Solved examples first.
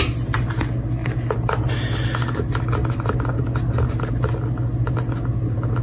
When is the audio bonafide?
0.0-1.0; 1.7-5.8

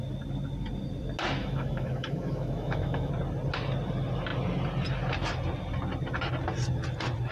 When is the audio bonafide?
0.0-1.4; 3.1-7.3